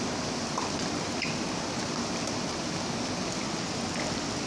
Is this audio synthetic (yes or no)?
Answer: no